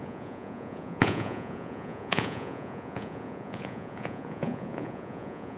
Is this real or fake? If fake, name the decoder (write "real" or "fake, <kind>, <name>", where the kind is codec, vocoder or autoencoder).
fake, vocoder, Vocos